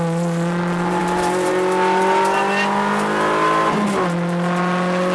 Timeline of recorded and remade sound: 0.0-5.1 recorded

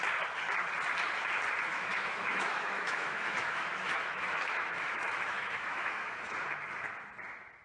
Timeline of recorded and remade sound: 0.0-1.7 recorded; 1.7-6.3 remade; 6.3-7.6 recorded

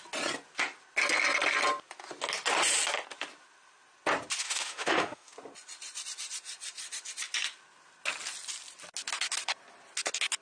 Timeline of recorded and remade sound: 0.0-4.4 recorded; 4.4-5.3 remade; 5.3-10.4 recorded

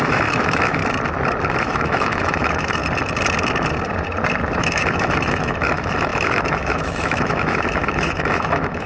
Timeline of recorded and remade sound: 0.0-0.8 remade; 0.8-1.6 recorded; 1.6-2.8 remade; 2.8-4.6 recorded; 4.6-8.9 remade

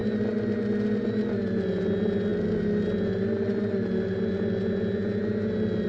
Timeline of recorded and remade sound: 0.0-5.9 recorded

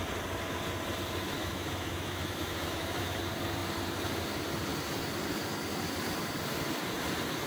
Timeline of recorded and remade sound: 0.0-1.4 recorded; 1.4-3.2 remade; 3.2-7.5 recorded